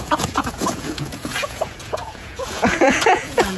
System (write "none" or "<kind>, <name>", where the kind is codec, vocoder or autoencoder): vocoder, Vocos